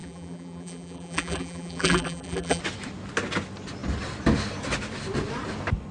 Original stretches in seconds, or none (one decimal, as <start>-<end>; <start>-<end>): 2.6-5.9